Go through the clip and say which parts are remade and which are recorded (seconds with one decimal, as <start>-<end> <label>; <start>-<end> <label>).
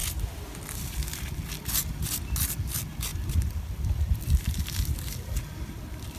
0.0-3.1 recorded; 3.1-6.2 remade